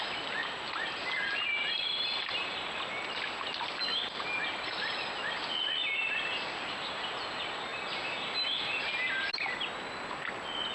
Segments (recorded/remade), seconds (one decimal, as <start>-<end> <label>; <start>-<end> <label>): 0.0-0.4 recorded; 0.4-3.1 remade; 3.1-3.9 recorded; 3.9-5.0 remade; 5.0-10.7 recorded